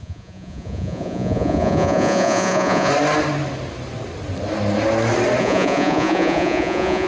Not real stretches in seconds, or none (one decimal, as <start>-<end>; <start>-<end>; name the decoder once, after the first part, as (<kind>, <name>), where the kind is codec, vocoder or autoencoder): 0.0-2.9 (vocoder, Vocos); 5.4-7.1